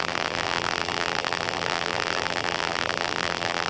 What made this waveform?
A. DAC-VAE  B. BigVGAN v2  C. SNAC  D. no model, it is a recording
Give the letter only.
B